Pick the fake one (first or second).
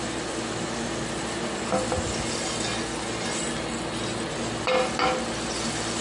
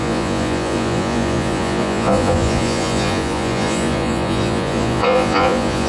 second